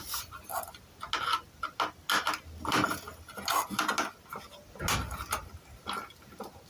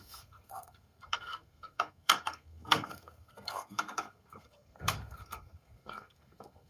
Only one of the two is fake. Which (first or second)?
second